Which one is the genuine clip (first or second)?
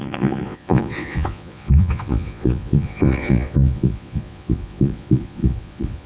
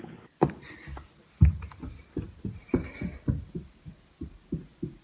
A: second